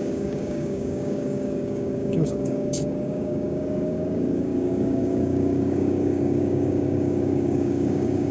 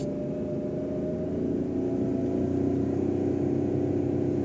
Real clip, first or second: second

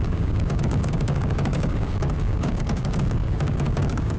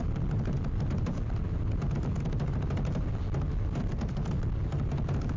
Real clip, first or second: second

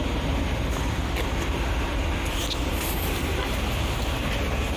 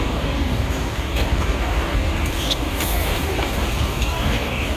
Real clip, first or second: first